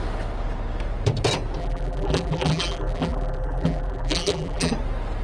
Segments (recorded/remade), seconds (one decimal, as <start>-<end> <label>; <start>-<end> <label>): 0.0-1.6 recorded; 1.6-4.7 remade; 4.7-5.2 recorded